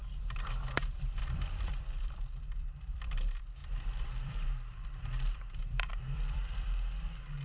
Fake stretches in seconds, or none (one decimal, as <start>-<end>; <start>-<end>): 0.0-7.4